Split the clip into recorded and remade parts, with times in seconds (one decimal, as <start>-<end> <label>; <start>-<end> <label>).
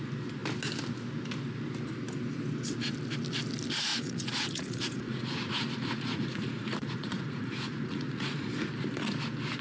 0.0-3.9 recorded; 3.9-8.5 remade; 8.5-9.6 recorded